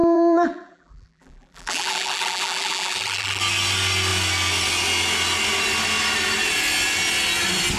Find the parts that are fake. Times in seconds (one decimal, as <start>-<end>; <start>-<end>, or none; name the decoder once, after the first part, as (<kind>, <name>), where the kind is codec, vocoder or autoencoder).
0.0-3.4 (vocoder, BigVGAN v2)